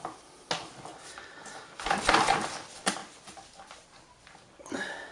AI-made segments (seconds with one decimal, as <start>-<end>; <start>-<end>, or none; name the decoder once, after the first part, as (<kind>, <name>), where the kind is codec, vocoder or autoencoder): none